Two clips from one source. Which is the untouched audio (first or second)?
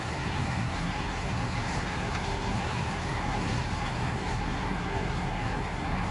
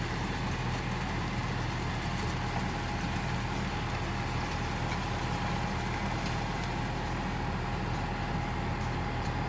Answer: second